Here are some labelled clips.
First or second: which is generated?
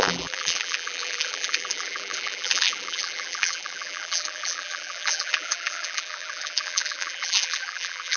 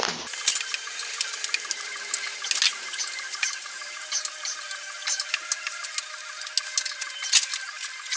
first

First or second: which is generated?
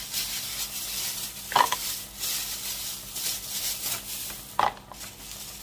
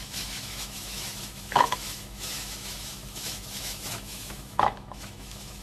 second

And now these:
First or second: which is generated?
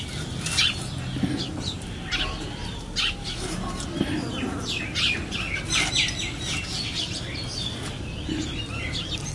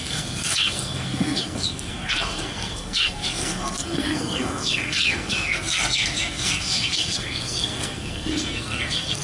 second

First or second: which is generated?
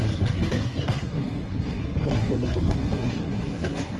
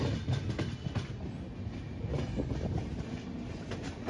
first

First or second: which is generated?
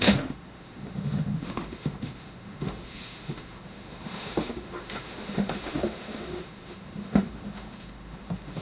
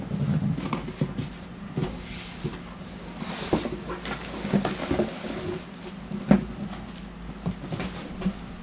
first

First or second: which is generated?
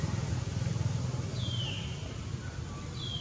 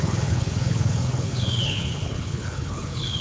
second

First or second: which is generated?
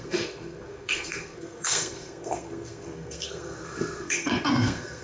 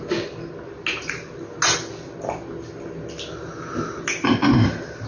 first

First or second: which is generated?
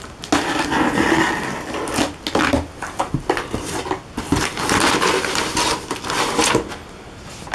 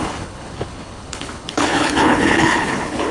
second